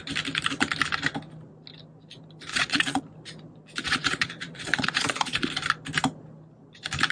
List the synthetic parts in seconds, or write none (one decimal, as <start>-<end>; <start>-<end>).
2.5-3.0; 3.8-5.5

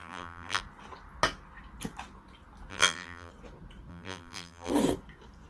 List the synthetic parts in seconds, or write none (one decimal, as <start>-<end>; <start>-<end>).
0.0-0.6; 2.7-3.3; 3.9-4.7

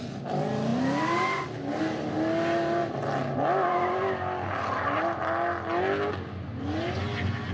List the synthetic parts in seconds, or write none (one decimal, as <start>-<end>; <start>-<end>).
none

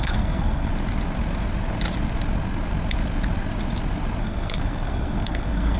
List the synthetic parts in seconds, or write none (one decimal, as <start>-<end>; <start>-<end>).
0.0-0.7; 4.2-5.8

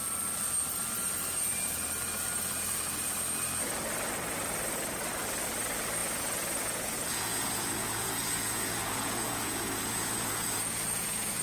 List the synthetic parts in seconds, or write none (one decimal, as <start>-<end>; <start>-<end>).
6.0-11.4